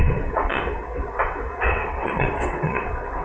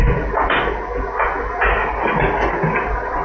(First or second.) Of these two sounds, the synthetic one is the first